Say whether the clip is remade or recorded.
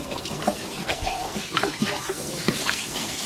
remade